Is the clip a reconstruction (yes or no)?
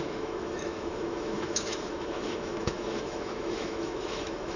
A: yes